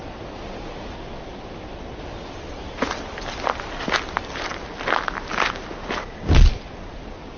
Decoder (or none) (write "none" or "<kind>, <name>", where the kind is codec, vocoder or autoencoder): none